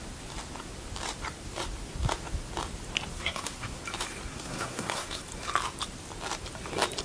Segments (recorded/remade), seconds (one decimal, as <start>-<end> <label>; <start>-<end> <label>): 0.0-3.1 recorded; 3.1-3.8 remade; 3.8-4.3 recorded; 4.3-5.2 remade; 5.2-7.0 recorded